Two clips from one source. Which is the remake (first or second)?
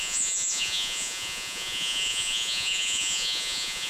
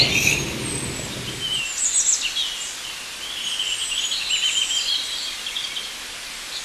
first